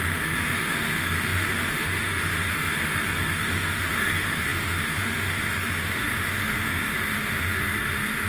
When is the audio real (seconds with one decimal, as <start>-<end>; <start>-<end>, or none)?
none